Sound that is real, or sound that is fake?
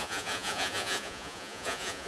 fake